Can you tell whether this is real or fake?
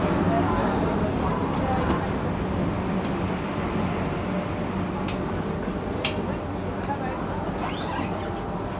real